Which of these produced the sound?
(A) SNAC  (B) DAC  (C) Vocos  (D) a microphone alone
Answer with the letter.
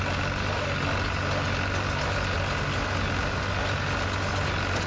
D